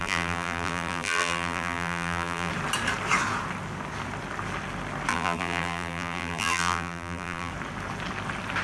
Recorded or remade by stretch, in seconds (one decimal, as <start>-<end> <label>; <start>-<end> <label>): 0.0-2.5 remade; 2.5-5.1 recorded; 5.1-7.5 remade; 7.5-8.6 recorded